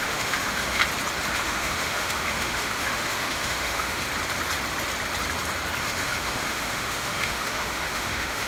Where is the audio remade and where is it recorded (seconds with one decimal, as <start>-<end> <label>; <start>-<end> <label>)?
0.0-0.8 remade; 0.8-1.3 recorded; 1.3-4.0 remade; 4.0-5.8 recorded; 5.8-8.5 remade